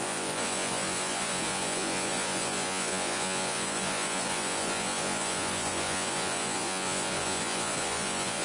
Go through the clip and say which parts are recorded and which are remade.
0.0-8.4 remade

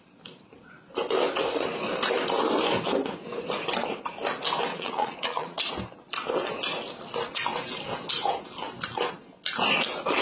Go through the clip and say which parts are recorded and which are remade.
0.0-4.7 recorded; 4.7-5.7 remade; 5.7-10.2 recorded